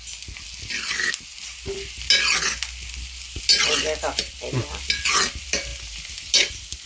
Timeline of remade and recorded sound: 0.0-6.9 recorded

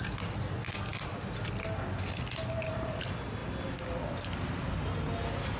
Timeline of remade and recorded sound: 0.0-5.6 recorded

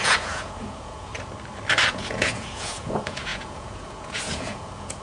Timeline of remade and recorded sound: 0.0-1.1 remade; 1.1-1.9 recorded; 1.9-5.0 remade

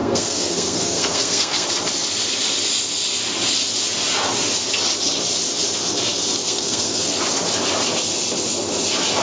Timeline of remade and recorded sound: 0.0-1.7 remade; 1.7-6.4 recorded; 6.4-7.2 remade; 7.2-9.2 recorded

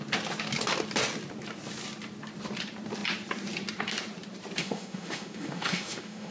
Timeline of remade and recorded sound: 0.0-4.6 recorded; 4.6-6.3 remade